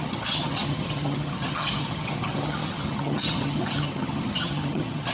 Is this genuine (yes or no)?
no